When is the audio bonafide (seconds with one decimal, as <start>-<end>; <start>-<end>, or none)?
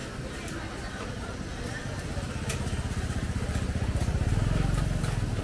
1.1-1.8; 5.0-5.4